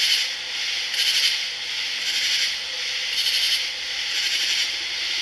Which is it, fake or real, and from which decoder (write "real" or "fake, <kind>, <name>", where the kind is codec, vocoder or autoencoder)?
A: real